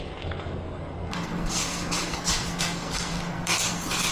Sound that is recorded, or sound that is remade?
remade